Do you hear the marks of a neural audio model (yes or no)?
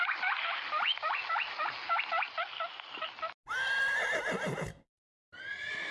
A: no